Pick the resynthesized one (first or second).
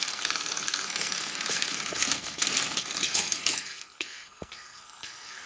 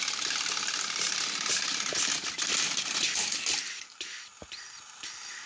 first